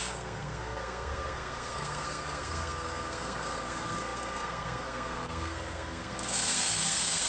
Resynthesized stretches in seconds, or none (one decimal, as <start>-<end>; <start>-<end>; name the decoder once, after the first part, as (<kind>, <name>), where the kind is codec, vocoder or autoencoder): 0.0-7.3 (codec, SNAC)